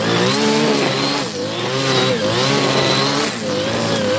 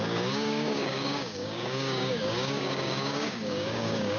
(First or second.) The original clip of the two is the first